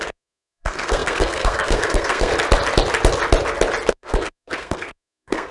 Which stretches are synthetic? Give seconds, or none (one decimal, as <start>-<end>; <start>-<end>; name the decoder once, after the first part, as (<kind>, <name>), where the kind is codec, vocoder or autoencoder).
0.0-2.3 (codec, SNAC); 3.9-5.5